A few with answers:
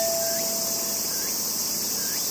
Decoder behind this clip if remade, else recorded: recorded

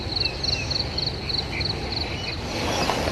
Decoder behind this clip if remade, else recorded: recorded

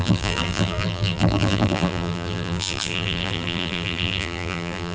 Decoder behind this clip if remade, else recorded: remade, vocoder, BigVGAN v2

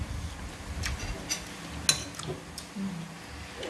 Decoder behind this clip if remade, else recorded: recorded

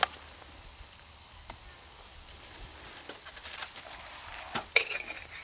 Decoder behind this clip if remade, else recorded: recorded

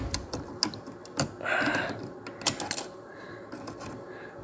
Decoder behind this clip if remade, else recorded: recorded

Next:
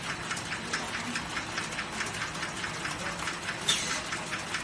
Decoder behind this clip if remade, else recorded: recorded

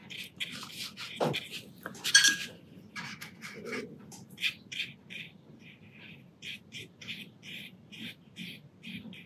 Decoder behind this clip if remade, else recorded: recorded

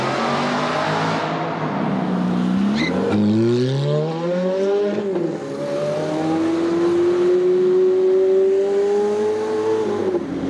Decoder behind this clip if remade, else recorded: recorded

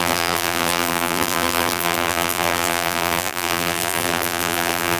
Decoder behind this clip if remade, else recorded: remade, vocoder, BigVGAN v2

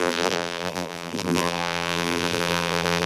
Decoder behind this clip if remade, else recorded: remade, vocoder, BigVGAN v2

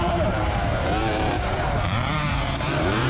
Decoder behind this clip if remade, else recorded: remade, vocoder, BigVGAN v2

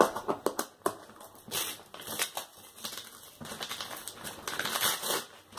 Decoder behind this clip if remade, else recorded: recorded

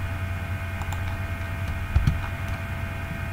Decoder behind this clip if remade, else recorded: recorded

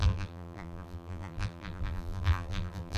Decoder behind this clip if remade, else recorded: remade, vocoder, BigVGAN v2